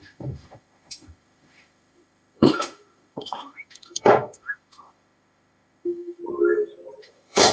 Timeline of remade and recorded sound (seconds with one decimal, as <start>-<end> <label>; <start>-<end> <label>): 0.0-6.2 remade; 6.2-7.0 recorded; 7.0-7.5 remade